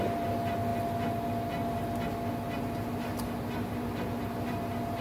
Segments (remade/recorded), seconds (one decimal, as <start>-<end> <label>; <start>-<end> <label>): 0.0-5.0 recorded